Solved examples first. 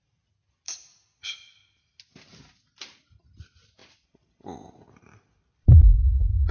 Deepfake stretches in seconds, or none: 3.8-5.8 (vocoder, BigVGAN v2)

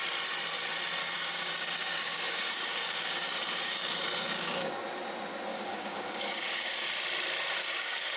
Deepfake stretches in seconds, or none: 1.0-4.7 (codec, DAC); 5.5-6.9; 7.6-8.2

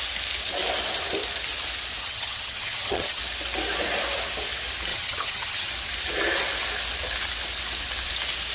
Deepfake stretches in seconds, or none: 2.0-3.2 (vocoder, HiFi-GAN); 4.9-5.7

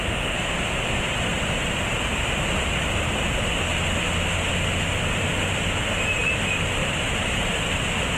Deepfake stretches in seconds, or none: 6.8-7.4 (vocoder, BigVGAN v2)

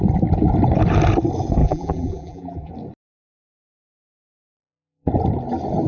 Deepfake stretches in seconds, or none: 1.6-2.7 (vocoder, BigVGAN v2); 3.4-5.1

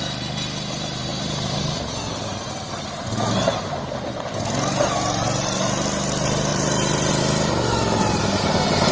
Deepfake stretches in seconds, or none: 1.1-3.4 (vocoder, BigVGAN v2); 6.5-7.1